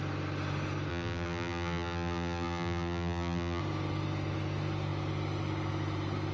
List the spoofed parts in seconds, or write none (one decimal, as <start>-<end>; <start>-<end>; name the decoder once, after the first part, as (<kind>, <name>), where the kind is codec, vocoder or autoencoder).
0.9-3.6 (vocoder, BigVGAN v2)